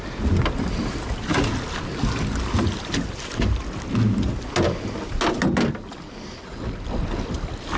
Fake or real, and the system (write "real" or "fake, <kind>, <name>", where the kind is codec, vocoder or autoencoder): real